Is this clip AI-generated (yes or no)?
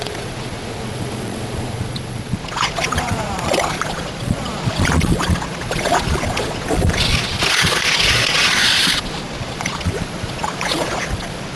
yes